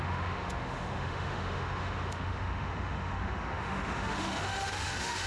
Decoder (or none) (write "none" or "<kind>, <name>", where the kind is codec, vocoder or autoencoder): autoencoder, DAC-VAE